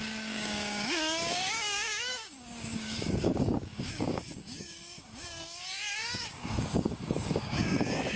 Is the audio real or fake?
fake